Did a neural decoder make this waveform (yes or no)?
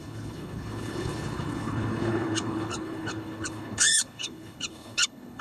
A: yes